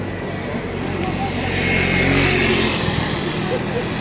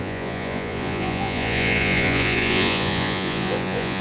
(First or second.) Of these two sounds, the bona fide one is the first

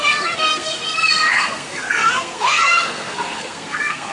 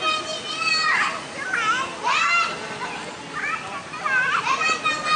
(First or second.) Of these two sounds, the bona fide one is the second